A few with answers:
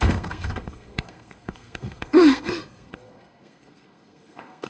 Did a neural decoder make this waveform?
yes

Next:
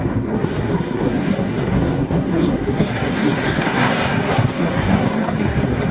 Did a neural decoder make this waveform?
yes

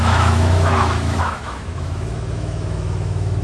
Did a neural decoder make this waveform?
yes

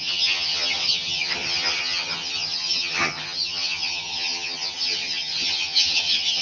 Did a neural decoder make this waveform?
yes